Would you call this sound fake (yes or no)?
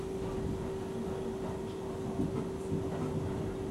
no